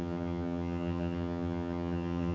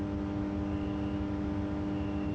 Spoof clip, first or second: first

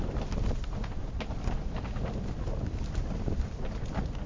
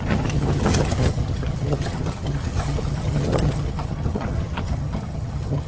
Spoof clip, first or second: second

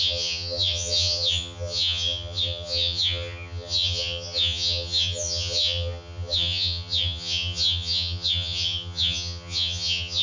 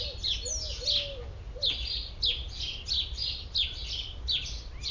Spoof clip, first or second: first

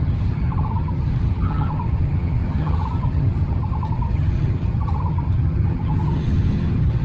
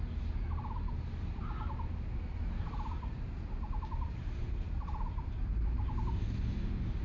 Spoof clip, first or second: first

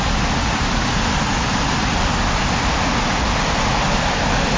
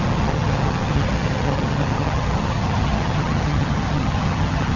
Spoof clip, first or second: second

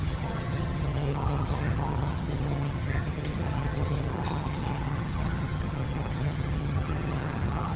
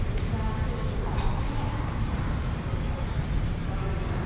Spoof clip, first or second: first